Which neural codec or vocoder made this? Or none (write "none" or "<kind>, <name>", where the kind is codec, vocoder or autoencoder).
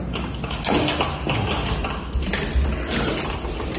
none